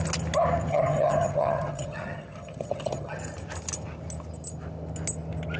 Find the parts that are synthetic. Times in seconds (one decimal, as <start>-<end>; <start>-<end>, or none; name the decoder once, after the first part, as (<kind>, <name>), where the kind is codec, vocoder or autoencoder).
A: 0.7-3.2 (vocoder, HiFi-GAN)